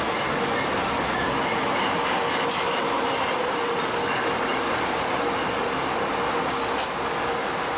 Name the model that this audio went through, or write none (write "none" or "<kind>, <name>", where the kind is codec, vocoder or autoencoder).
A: none